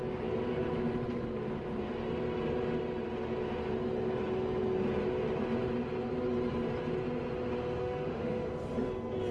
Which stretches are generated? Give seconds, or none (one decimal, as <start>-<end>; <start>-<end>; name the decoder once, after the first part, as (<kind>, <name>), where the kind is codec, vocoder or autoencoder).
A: 7.8-8.5 (autoencoder, DAC-VAE)